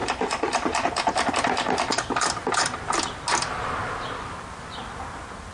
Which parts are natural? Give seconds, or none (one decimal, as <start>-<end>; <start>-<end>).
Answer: 1.3-2.4; 3.0-5.5